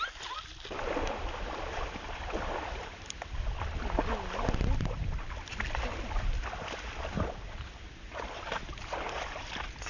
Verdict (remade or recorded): recorded